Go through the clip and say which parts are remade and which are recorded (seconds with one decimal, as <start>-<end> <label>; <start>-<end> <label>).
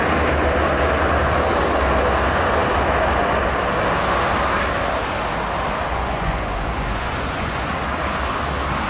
0.0-5.9 recorded; 5.9-7.7 remade; 7.7-8.9 recorded